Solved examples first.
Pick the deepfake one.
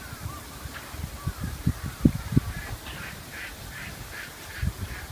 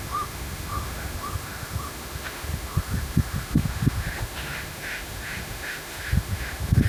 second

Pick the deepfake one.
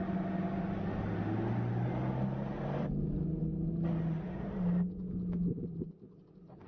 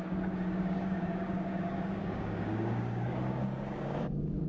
second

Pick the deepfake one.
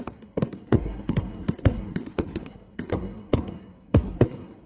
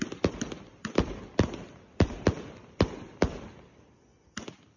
first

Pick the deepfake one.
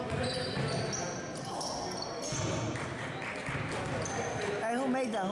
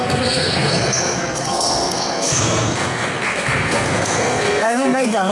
second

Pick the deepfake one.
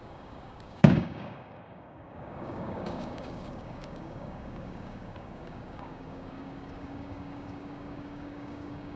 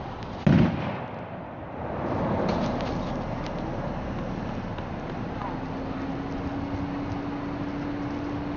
first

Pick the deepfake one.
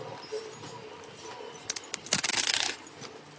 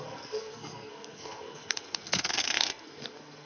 second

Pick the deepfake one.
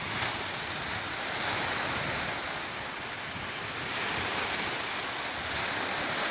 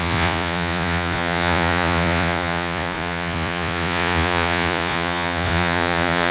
second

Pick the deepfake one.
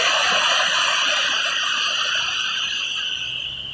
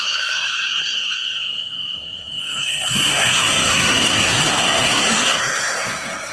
second